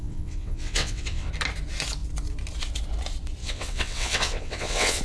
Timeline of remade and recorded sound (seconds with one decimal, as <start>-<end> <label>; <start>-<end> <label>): 0.0-1.3 remade; 1.3-3.4 recorded; 3.4-5.0 remade